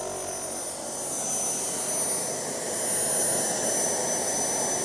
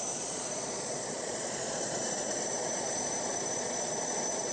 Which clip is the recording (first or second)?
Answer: first